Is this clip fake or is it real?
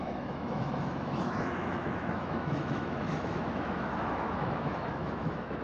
fake